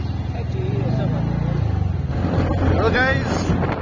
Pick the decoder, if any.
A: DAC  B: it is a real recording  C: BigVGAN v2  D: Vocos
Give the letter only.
B